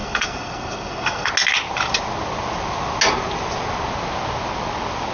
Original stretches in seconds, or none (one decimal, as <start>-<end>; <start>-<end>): 1.3-5.1